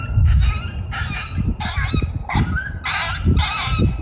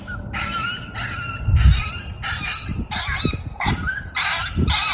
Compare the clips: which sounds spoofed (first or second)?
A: second